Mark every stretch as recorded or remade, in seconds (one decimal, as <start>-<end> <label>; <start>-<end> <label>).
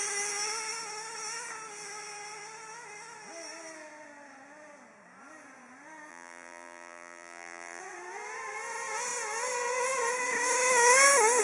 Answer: 0.0-6.1 recorded; 6.1-7.8 remade; 7.8-11.4 recorded